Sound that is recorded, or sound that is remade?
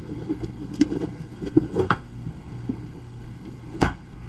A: remade